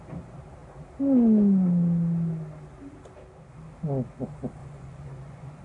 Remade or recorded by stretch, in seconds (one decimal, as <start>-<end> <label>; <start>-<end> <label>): 0.0-4.6 recorded; 4.6-5.6 remade